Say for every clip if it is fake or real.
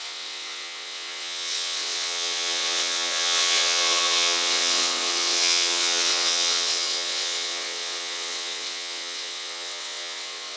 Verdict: fake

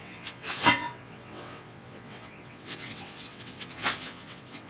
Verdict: fake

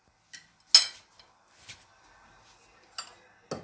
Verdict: real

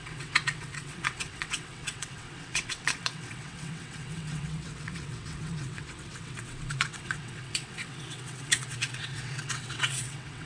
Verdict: fake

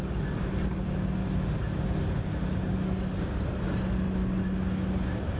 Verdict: real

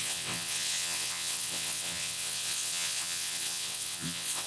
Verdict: fake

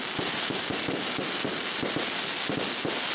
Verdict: real